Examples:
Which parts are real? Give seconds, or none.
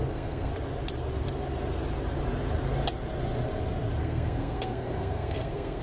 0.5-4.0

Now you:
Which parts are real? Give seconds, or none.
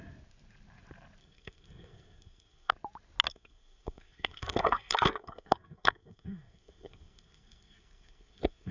0.0-1.2; 2.7-3.3